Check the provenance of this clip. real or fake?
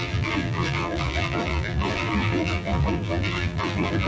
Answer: fake